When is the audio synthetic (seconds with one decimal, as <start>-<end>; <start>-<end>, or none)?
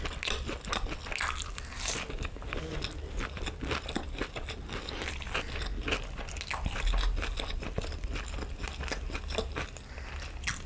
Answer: none